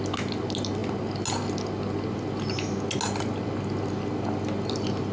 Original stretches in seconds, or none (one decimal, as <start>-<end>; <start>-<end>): 0.0-5.1

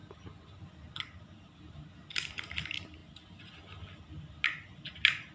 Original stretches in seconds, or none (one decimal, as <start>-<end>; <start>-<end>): 0.0-5.3

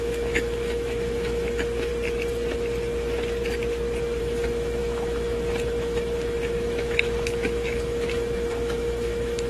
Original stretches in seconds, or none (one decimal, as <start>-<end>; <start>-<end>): 1.9-4.2

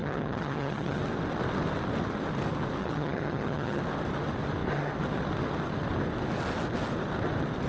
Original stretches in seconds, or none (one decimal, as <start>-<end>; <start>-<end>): 1.0-2.8; 3.8-7.7

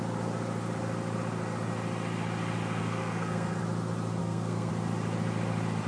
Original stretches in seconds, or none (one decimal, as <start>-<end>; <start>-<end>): 0.0-2.8; 3.6-4.2; 4.7-5.9

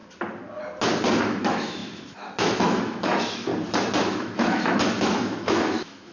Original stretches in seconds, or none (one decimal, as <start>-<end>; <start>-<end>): 0.0-1.2; 3.5-4.0